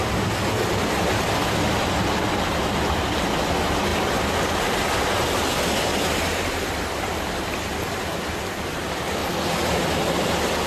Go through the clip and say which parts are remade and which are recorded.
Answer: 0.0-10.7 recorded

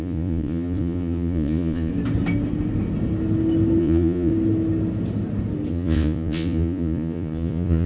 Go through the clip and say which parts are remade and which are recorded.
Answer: 0.0-1.9 remade; 1.9-3.8 recorded; 3.8-4.3 remade; 4.3-5.7 recorded; 5.7-7.9 remade

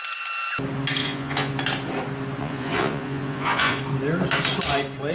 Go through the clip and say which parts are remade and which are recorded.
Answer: 0.0-1.0 recorded; 1.0-1.5 remade; 1.5-2.4 recorded; 2.4-3.8 remade; 3.8-5.1 recorded

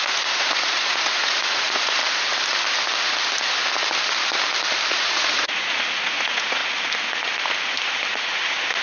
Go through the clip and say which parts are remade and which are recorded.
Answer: 0.0-2.0 remade; 2.0-4.9 recorded; 4.9-6.6 remade; 6.6-8.1 recorded; 8.1-8.8 remade